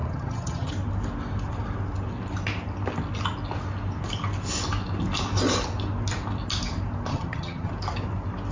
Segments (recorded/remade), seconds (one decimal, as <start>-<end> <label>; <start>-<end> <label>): 0.0-0.7 remade; 0.7-7.1 recorded; 7.1-7.7 remade; 7.7-8.5 recorded